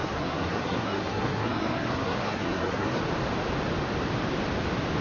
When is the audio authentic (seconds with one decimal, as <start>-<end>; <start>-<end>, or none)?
3.0-5.0